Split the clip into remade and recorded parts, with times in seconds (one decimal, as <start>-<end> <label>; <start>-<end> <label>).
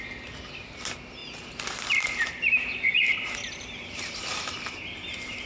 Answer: 0.0-1.2 recorded; 1.2-4.5 remade; 4.5-5.5 recorded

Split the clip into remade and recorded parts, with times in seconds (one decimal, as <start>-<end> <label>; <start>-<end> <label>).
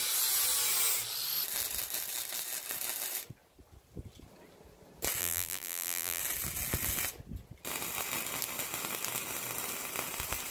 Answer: 0.0-5.2 recorded; 5.2-6.2 remade; 6.2-10.5 recorded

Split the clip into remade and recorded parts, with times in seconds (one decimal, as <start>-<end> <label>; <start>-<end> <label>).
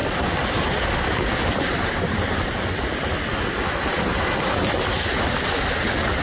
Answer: 0.0-6.2 recorded